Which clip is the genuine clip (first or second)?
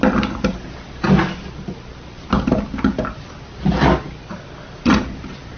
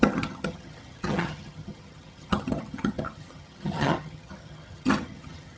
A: first